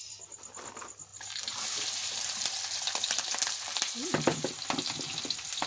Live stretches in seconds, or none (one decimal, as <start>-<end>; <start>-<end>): 0.0-1.1; 4.5-5.7